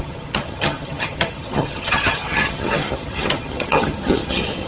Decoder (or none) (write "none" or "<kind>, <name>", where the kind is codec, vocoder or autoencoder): vocoder, HiFi-GAN